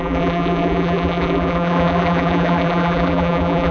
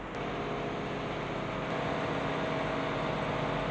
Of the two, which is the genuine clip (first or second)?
second